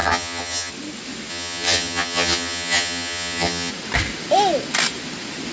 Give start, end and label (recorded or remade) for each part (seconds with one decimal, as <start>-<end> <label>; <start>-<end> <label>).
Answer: 0.0-0.7 remade; 0.7-1.3 recorded; 1.3-3.7 remade; 3.7-5.5 recorded

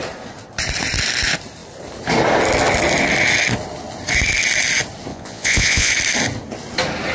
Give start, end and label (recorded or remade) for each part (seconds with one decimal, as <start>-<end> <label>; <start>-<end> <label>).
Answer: 0.0-5.1 recorded; 5.1-5.9 remade; 5.9-7.1 recorded

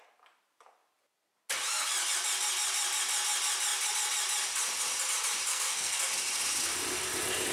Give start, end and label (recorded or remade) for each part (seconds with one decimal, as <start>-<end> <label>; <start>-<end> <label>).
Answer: 0.0-5.5 recorded; 5.5-6.1 remade; 6.1-7.5 recorded

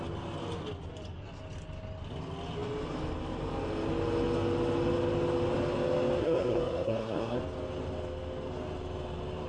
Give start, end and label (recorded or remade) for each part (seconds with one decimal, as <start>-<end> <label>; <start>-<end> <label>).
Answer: 0.0-6.2 recorded; 6.2-7.4 remade; 7.4-9.5 recorded

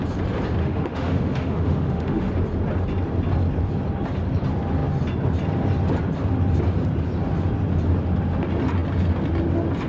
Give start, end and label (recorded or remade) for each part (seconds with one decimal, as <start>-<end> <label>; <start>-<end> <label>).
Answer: 0.0-0.6 recorded; 0.6-2.3 remade; 2.3-9.9 recorded

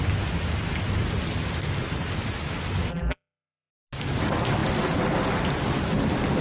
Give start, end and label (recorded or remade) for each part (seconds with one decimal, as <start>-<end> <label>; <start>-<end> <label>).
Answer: 0.0-2.9 recorded; 2.9-3.7 remade; 3.7-6.4 recorded

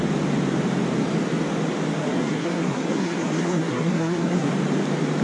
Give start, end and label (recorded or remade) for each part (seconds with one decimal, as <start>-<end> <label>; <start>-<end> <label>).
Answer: 0.0-2.0 recorded; 2.0-4.5 remade; 4.5-5.2 recorded